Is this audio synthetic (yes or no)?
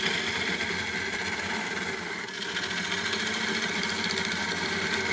no